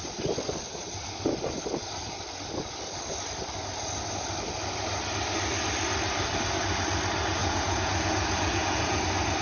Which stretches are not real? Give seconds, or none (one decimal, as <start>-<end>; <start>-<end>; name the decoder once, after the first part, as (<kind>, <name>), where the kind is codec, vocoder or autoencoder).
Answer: 7.4-9.0 (vocoder, Vocos)